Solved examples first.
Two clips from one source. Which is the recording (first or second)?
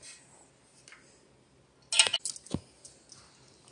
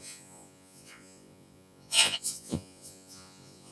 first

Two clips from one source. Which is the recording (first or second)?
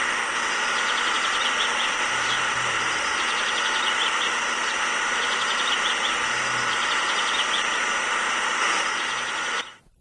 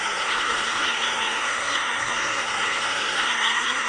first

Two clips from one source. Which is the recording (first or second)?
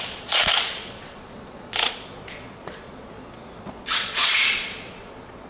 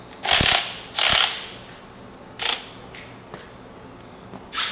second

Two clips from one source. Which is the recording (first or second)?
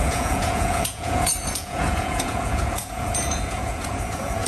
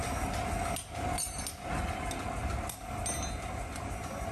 second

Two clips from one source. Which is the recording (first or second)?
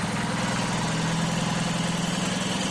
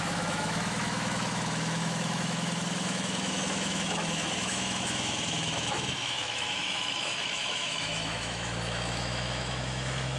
first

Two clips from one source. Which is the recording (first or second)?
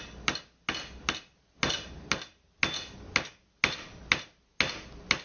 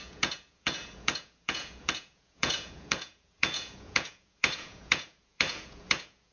first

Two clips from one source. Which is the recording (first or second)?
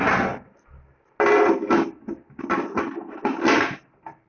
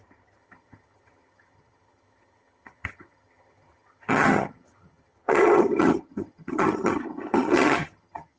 first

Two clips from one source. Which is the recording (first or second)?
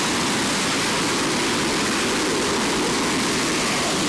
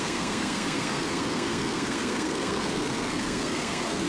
first